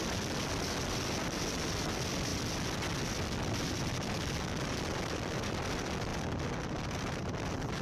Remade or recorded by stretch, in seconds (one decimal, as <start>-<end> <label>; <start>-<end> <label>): 0.0-7.8 recorded